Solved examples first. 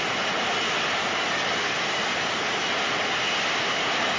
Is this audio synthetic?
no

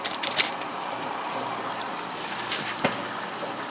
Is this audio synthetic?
yes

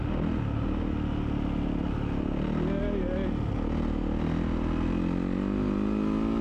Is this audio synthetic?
no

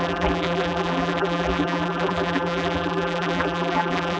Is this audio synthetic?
yes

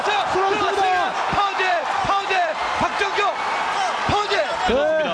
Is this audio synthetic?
no